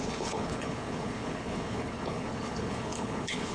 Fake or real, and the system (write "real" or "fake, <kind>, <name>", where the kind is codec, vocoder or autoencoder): fake, codec, HILCodec